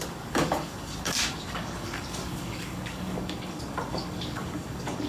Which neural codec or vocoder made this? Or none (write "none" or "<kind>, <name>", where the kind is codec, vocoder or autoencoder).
codec, DAC